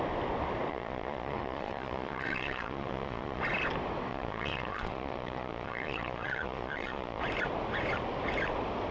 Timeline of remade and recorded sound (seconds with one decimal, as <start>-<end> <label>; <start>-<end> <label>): 0.0-0.7 recorded; 0.7-3.4 remade; 3.4-4.1 recorded; 4.1-7.2 remade; 7.2-8.9 recorded